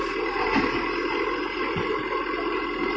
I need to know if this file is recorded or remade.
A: recorded